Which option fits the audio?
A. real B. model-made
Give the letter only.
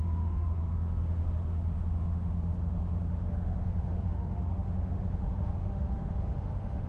B